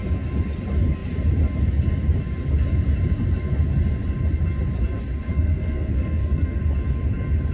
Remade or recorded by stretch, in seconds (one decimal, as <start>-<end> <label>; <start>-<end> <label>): 0.0-5.3 recorded; 5.3-6.6 remade; 6.6-7.5 recorded